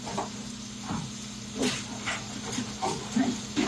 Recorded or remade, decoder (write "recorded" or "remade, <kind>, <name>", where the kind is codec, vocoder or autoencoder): recorded